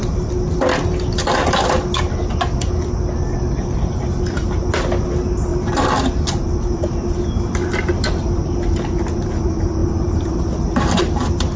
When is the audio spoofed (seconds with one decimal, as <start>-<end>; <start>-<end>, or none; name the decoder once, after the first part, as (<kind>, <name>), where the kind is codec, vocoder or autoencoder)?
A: 5.5-6.0 (vocoder, BigVGAN v2)